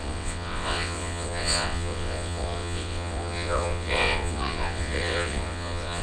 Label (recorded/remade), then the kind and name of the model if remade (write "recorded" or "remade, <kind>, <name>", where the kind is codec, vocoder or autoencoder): remade, vocoder, WaveNeXt